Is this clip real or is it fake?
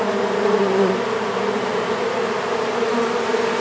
fake